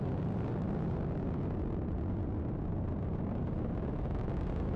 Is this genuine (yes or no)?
yes